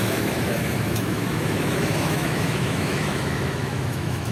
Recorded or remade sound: remade